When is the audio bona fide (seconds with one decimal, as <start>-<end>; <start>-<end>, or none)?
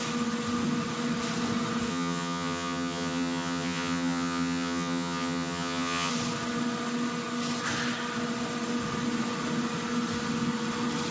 0.0-1.9; 6.1-11.1